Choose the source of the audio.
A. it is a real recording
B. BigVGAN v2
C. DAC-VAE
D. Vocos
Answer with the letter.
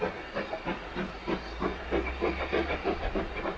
A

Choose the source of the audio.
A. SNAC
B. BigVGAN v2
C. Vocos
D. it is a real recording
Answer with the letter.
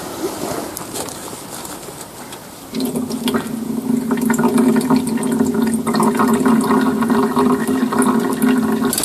D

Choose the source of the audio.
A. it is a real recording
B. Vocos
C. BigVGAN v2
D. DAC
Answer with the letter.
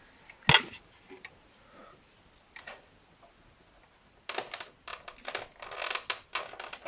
A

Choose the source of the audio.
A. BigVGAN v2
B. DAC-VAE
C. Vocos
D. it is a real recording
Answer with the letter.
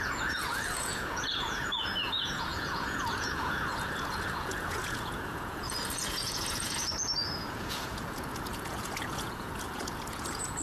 C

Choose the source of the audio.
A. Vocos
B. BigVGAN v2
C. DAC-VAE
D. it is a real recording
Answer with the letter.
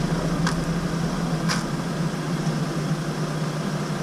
D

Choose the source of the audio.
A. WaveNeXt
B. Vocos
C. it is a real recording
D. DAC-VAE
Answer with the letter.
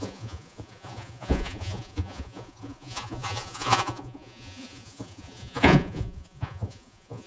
B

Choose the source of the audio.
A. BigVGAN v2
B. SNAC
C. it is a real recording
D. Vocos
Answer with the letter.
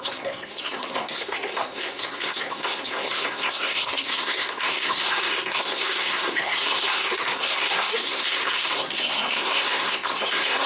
B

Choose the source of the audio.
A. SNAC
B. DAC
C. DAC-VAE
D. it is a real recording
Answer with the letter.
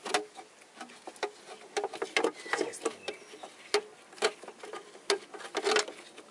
D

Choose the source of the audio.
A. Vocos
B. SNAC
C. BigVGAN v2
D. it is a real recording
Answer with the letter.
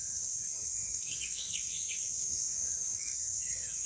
B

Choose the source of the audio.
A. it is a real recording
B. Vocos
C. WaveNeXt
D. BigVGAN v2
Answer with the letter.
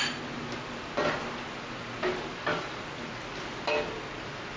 A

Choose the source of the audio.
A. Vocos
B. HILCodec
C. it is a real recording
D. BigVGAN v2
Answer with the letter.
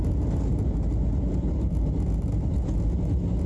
C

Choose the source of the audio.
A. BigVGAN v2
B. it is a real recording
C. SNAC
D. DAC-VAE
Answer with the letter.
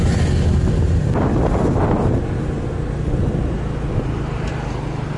B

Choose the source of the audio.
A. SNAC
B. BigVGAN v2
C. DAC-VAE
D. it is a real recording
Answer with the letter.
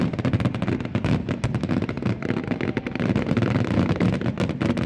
D